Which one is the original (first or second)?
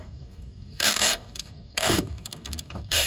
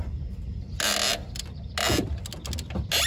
second